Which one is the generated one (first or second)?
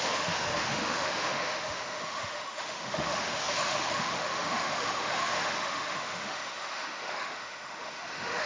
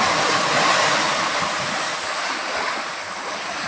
first